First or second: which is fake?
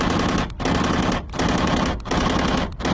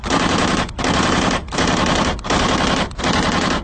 second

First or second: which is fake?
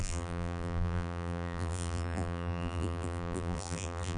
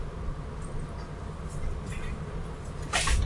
first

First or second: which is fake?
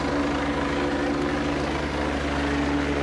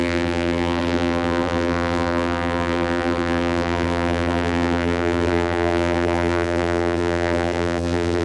second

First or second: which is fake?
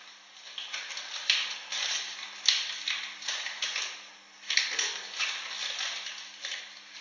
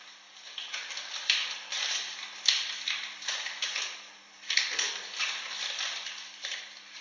second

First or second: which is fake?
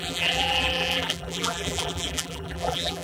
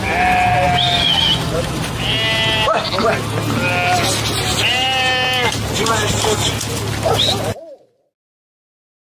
first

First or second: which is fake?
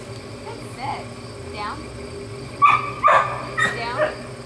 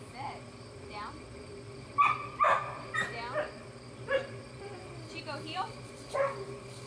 second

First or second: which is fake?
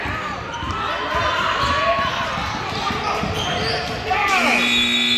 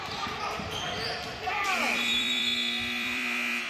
second